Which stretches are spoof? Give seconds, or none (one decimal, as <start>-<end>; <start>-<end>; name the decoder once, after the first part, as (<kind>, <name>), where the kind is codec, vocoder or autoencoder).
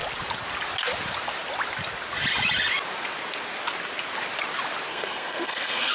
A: 4.9-5.9 (codec, SNAC)